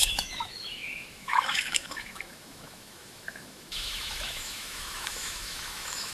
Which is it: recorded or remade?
remade